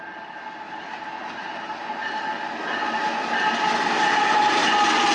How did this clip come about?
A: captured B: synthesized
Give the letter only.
A